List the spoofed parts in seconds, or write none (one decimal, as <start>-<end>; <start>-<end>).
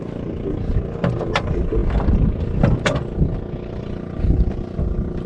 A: none